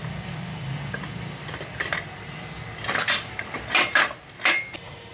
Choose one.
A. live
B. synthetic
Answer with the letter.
A